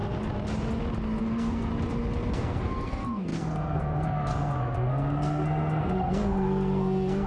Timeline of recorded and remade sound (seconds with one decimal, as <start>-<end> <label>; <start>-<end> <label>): 0.0-1.2 recorded; 1.2-1.7 remade; 1.7-2.3 recorded; 2.3-7.3 remade